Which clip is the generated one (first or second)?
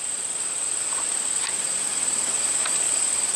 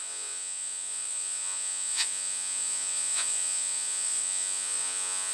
second